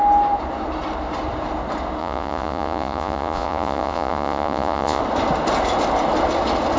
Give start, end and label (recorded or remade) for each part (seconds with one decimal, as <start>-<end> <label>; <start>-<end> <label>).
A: 0.0-2.0 recorded; 2.0-5.0 remade; 5.0-6.8 recorded